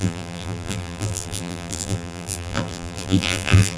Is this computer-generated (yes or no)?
yes